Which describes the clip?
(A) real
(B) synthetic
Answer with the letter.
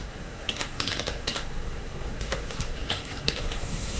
B